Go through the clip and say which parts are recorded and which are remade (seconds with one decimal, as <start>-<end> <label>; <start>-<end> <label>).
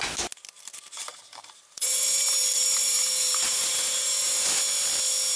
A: 0.0-1.1 recorded; 1.1-4.3 remade; 4.3-5.4 recorded